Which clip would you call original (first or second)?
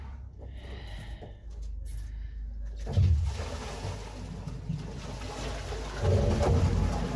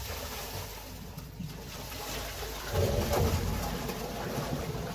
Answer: first